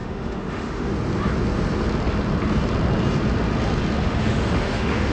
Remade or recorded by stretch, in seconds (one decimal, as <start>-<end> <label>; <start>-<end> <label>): 0.0-0.9 remade; 0.9-4.0 recorded; 4.0-5.1 remade